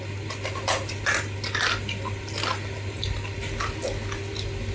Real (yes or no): yes